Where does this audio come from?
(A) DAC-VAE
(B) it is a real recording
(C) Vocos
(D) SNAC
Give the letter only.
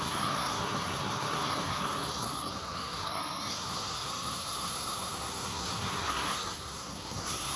D